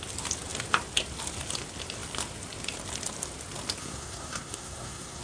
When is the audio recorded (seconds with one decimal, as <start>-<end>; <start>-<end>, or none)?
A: 0.0-3.8